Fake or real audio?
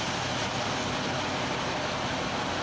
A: fake